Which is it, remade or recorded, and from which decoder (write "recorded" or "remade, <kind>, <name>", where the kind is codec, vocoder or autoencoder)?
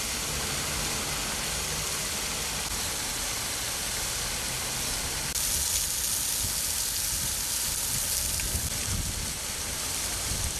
recorded